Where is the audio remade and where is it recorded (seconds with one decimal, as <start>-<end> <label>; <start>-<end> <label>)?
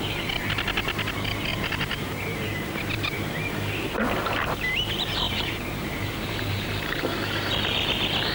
0.0-1.5 recorded; 1.5-3.5 remade; 3.5-5.1 recorded; 5.1-6.7 remade; 6.7-8.3 recorded